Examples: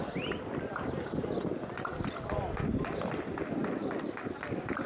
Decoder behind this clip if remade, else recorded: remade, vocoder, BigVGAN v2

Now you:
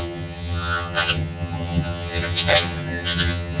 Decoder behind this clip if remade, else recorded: remade, vocoder, HiFi-GAN